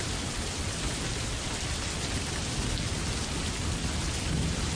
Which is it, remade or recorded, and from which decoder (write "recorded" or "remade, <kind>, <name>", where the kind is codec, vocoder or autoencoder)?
recorded